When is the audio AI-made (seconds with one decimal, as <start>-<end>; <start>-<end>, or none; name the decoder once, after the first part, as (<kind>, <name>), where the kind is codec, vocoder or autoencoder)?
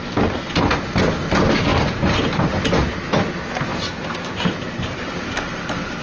1.7-2.4 (vocoder, BigVGAN v2); 3.7-5.1